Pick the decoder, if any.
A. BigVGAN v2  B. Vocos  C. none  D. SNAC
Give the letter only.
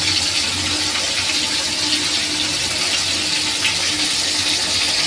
C